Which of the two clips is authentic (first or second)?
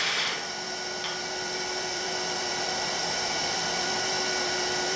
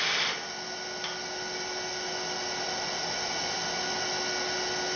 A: second